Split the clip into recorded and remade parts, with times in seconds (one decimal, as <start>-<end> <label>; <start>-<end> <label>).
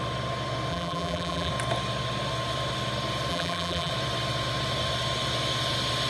0.0-0.7 recorded; 0.7-1.5 remade; 1.5-3.3 recorded; 3.3-3.9 remade; 3.9-6.1 recorded